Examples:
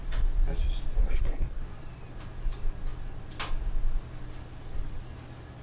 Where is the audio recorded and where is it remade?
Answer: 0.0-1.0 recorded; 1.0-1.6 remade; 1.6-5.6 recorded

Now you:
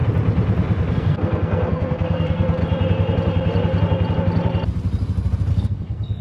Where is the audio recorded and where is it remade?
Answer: 0.0-0.9 recorded; 0.9-2.6 remade; 2.6-5.5 recorded; 5.5-6.2 remade

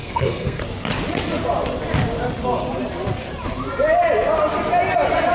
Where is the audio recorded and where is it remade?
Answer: 0.0-0.6 remade; 0.6-5.3 recorded